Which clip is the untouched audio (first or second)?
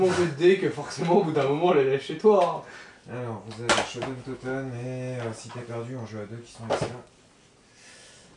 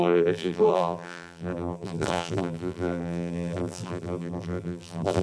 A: first